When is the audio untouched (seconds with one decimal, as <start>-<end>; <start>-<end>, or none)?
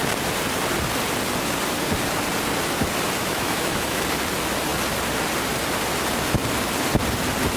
0.0-3.2; 4.0-7.6